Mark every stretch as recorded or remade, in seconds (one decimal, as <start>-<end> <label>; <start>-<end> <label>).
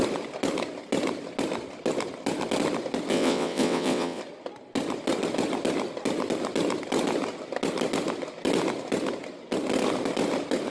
0.0-3.1 recorded; 3.1-4.2 remade; 4.2-10.7 recorded